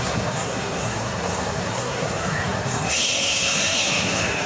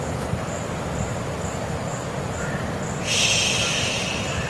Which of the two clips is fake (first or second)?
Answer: first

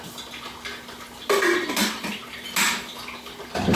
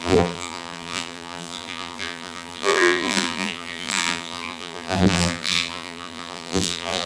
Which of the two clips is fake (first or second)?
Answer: second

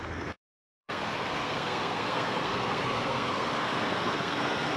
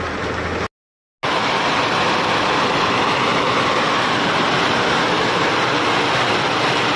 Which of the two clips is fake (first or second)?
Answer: first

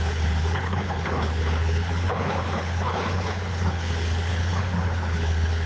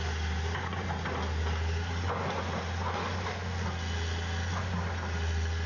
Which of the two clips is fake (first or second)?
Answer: first